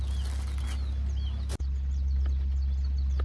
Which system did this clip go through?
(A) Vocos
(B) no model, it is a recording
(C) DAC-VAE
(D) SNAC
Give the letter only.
B